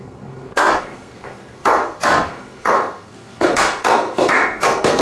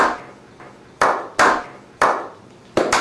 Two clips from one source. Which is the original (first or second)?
second